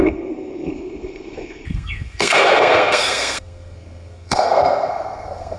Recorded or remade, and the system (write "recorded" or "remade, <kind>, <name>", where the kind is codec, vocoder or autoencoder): remade, codec, SNAC